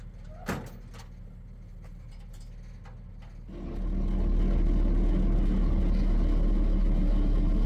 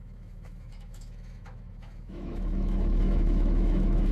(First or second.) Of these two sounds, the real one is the first